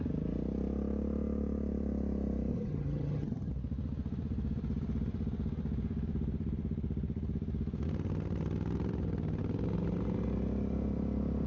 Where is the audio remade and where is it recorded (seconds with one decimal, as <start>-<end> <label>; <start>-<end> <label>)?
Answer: 0.0-2.5 recorded; 2.5-3.5 remade; 3.5-11.5 recorded